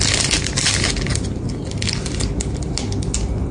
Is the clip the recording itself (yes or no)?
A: yes